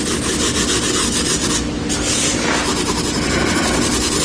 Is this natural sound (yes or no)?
yes